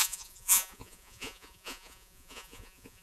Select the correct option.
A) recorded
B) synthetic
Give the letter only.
B